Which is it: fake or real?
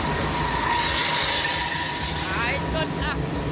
real